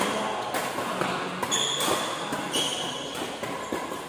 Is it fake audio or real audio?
real